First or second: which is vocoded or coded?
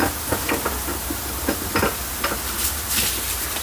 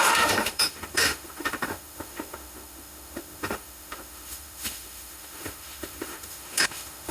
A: second